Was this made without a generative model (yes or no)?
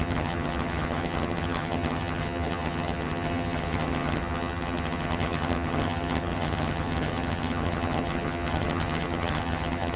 no